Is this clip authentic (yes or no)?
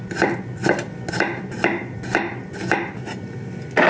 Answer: yes